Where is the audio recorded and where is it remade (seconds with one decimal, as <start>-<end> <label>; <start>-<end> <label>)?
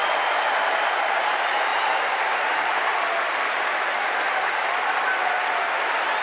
0.0-6.2 recorded